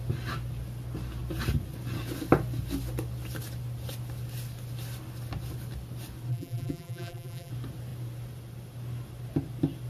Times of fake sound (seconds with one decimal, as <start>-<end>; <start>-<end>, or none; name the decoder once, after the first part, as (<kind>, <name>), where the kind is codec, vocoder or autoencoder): 6.3-7.5 (vocoder, BigVGAN v2)